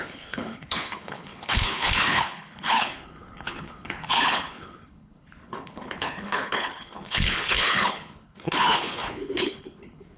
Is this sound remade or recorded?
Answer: remade